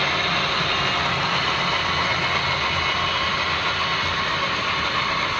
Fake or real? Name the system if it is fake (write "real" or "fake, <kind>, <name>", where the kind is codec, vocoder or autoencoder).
real